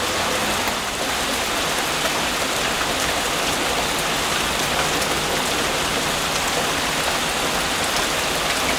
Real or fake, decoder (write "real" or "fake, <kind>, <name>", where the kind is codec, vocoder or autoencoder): real